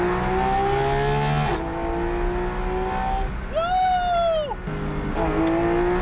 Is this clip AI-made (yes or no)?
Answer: no